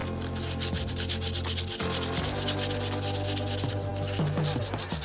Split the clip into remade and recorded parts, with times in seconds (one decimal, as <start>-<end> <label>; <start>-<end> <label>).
0.0-5.0 recorded